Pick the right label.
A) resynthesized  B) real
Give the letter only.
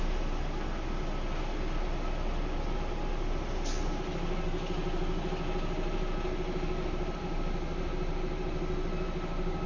B